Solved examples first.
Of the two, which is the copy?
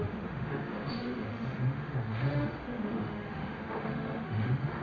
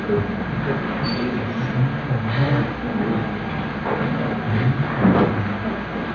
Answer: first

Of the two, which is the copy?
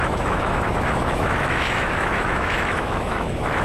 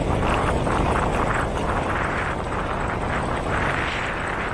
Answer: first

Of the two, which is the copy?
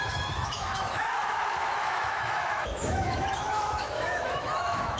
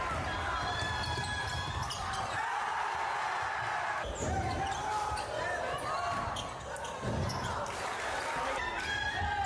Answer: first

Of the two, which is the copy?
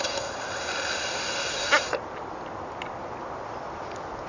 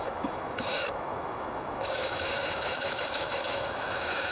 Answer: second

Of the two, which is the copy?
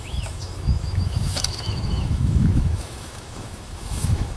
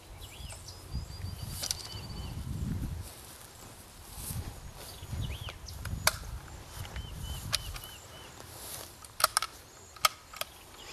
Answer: first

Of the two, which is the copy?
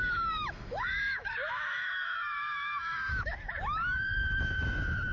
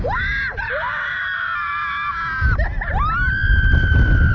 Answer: first